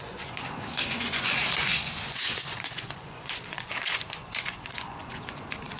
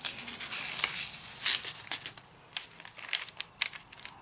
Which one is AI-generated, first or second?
first